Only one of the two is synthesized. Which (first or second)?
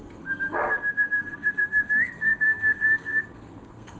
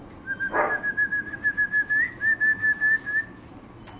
first